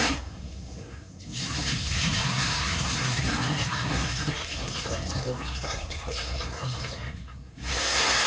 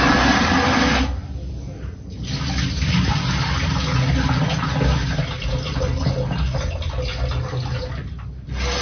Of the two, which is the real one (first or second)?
second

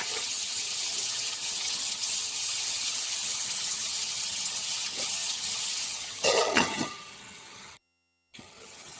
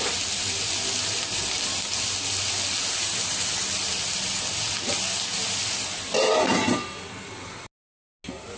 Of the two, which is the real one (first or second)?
second